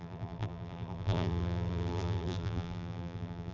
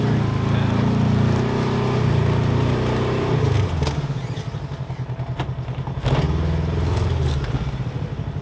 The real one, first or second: second